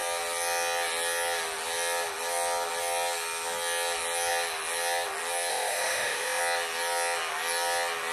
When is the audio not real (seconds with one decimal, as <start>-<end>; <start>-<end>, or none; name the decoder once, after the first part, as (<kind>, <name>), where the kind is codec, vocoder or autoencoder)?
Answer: 5.5-6.4 (autoencoder, DAC-VAE)